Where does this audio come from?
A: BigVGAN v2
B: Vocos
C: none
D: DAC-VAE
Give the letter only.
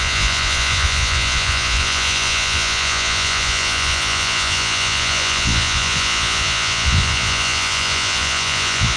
B